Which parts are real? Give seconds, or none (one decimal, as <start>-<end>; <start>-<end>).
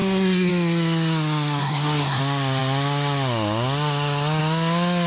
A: 0.5-1.6; 2.2-5.1